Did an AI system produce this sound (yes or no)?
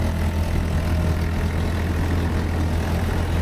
no